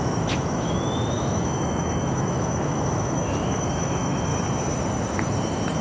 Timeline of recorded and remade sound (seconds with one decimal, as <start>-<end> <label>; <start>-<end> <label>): 0.0-4.3 remade; 4.3-5.8 recorded